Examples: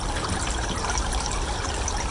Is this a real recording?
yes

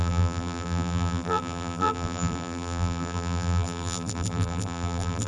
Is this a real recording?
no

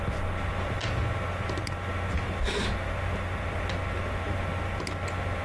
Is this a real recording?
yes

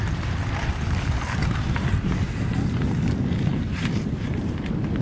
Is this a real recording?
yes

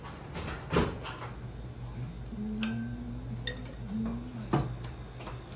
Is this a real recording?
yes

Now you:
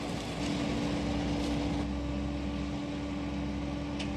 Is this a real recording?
yes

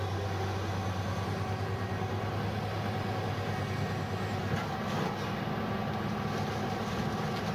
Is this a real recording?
yes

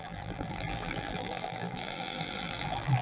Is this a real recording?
no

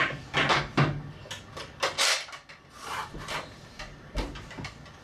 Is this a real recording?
yes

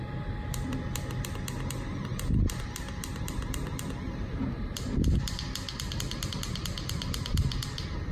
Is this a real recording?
yes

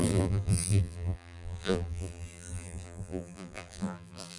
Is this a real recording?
no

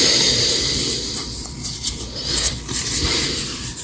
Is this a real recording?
no